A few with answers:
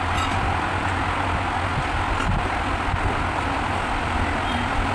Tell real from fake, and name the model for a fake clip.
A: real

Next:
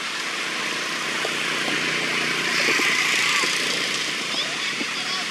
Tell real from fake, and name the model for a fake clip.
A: real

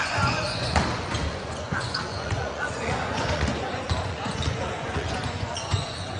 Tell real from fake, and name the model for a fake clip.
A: fake, vocoder, Vocos